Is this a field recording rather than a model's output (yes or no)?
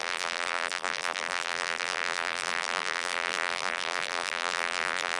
no